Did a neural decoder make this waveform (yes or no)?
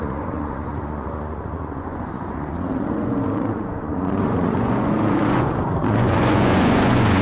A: yes